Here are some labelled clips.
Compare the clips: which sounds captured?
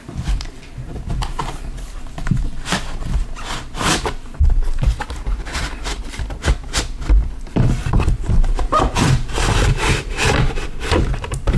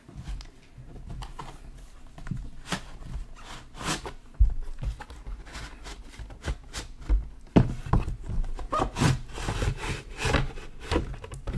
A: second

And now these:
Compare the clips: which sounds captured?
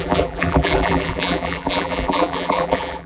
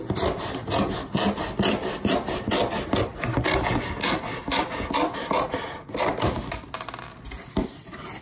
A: second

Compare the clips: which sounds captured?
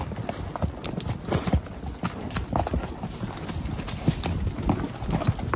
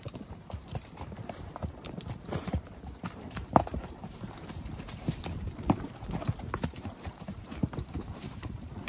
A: first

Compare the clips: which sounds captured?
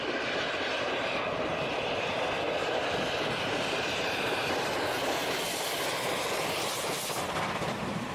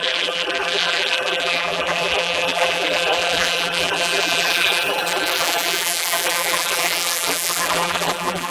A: first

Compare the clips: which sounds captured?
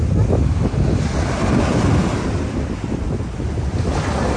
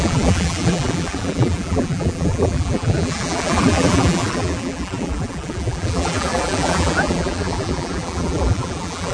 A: first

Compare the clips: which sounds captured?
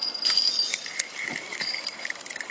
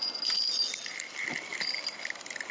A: second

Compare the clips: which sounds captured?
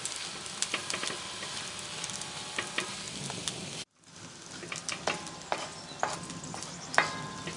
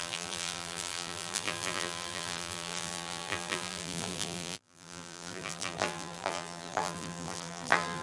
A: first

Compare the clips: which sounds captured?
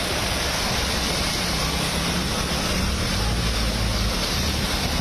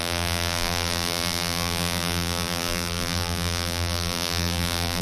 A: first